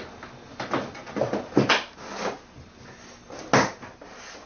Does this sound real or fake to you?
real